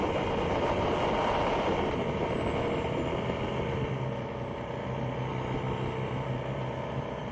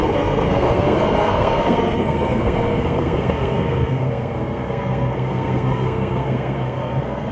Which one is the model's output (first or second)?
second